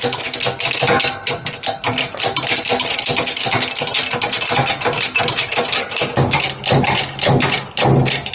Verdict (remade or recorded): recorded